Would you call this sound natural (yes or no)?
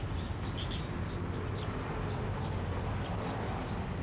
yes